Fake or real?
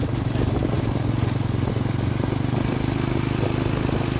real